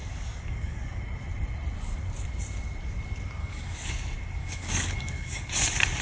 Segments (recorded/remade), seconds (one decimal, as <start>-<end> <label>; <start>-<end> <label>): 0.0-1.0 remade; 1.0-3.4 recorded; 3.4-3.9 remade; 3.9-4.4 recorded; 4.4-5.5 remade; 5.5-6.0 recorded